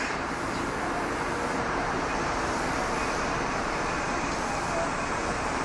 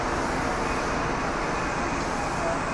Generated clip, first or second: first